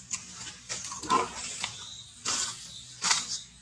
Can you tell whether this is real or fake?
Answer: real